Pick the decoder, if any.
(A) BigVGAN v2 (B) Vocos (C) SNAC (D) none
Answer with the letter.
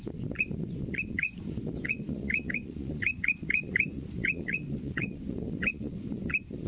B